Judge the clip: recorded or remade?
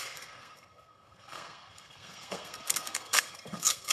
remade